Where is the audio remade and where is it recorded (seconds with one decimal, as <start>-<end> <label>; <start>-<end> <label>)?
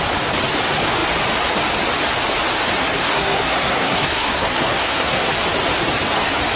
0.0-2.8 recorded; 2.8-5.3 remade; 5.3-6.6 recorded